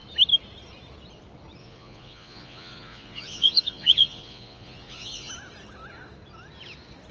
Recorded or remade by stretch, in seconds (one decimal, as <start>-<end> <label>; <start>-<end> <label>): 0.0-1.6 recorded; 1.6-5.3 remade; 5.3-7.1 recorded